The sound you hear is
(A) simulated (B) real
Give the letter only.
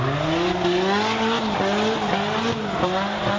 B